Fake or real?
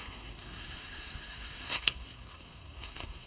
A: fake